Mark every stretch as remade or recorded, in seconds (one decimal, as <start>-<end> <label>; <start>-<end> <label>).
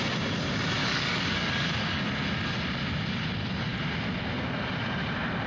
0.0-0.8 recorded; 0.8-2.0 remade; 2.0-5.5 recorded